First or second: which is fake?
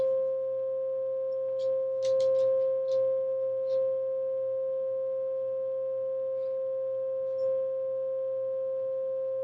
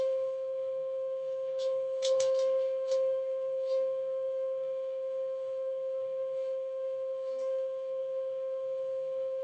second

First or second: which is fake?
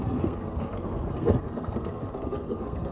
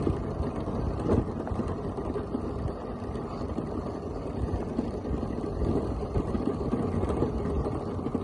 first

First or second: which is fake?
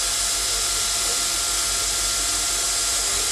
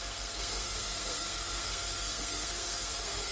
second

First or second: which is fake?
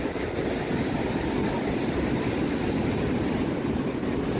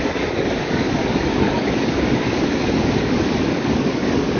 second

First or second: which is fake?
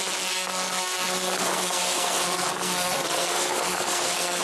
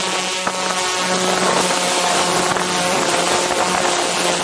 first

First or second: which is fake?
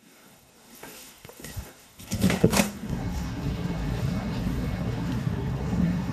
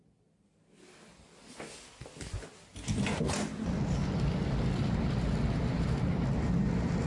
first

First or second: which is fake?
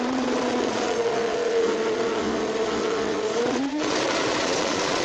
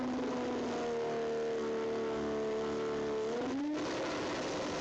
first